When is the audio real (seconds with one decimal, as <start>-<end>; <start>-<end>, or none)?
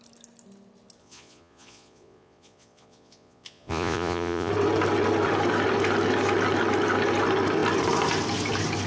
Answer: 0.0-1.0; 4.5-8.9